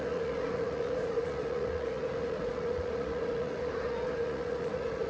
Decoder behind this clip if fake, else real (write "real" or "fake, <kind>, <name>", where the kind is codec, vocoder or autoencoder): fake, vocoder, Vocos